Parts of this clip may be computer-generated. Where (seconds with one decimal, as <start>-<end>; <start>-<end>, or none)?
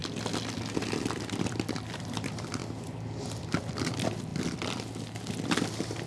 0.0-2.6; 3.6-6.1